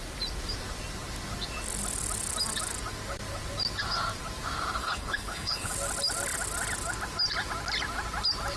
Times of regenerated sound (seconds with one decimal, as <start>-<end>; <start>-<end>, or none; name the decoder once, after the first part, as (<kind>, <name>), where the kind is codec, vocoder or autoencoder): 4.8-5.7 (codec, HILCodec)